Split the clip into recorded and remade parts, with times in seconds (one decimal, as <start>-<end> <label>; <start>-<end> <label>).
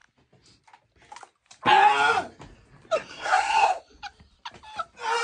0.0-3.1 recorded; 3.1-3.8 remade; 3.8-5.2 recorded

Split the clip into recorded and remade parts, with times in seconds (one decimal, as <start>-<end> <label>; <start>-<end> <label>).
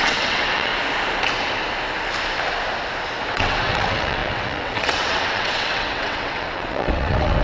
0.0-0.7 remade; 0.7-3.3 recorded; 3.3-7.4 remade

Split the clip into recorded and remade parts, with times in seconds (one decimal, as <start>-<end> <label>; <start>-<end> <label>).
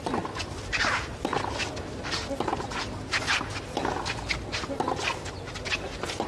0.0-6.3 recorded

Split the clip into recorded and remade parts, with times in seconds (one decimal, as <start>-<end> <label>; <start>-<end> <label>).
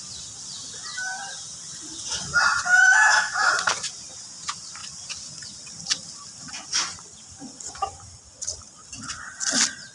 0.0-2.7 recorded; 2.7-3.5 remade; 3.5-9.9 recorded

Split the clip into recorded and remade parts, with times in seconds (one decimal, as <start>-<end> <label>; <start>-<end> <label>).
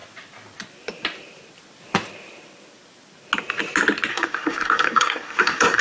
0.0-4.1 recorded; 4.1-5.8 remade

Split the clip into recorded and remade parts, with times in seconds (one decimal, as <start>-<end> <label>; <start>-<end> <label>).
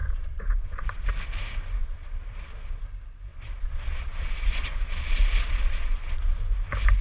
0.0-1.1 remade; 1.1-1.8 recorded; 1.8-2.8 remade; 2.8-3.3 recorded; 3.3-6.4 remade; 6.4-7.0 recorded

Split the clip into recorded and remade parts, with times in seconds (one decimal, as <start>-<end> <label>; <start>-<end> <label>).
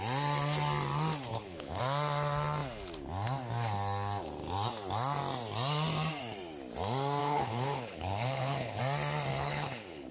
0.0-1.3 recorded; 1.3-1.8 remade; 1.8-7.2 recorded; 7.2-8.8 remade; 8.8-9.3 recorded; 9.3-10.1 remade